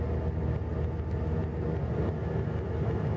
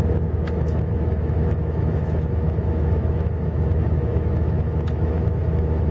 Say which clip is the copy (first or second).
second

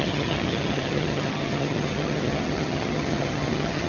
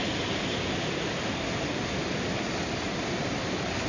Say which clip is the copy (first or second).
first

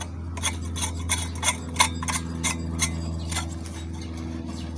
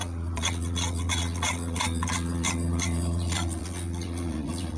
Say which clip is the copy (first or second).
second